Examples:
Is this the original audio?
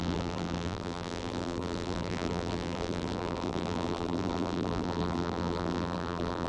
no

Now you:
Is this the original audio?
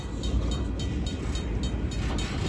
yes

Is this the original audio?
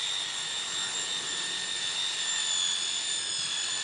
yes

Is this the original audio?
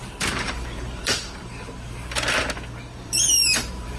no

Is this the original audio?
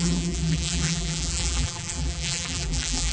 no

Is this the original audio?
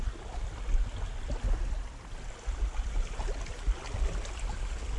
yes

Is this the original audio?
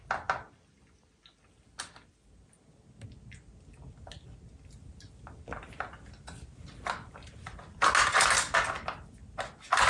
yes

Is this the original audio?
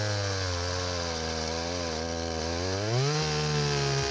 yes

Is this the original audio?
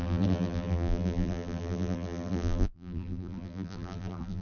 no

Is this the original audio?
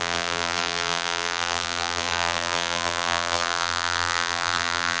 no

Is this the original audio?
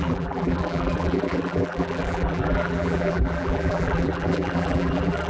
no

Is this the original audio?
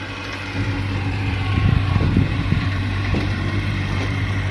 no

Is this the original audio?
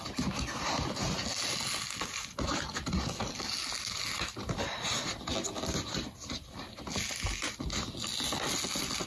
yes